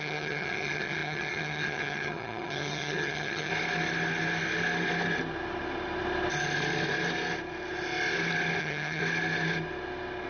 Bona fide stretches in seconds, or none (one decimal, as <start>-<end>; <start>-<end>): 3.5-8.6; 9.0-10.3